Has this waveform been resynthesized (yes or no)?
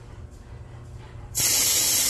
no